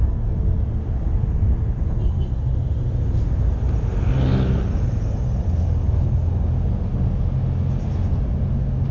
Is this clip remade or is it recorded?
recorded